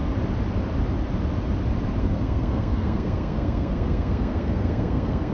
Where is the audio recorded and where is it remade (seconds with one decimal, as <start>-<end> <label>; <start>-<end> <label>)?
0.0-2.0 recorded; 2.0-5.3 remade